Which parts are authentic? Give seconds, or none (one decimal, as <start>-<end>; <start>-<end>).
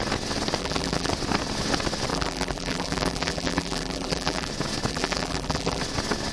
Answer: 0.0-0.6; 1.1-2.1; 4.5-4.9; 5.8-6.3